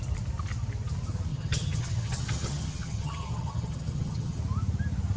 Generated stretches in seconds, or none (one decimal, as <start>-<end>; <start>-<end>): 1.3-4.4